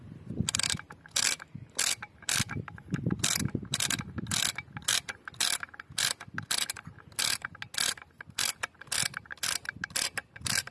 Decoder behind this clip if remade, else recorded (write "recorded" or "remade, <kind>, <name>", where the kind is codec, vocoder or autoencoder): recorded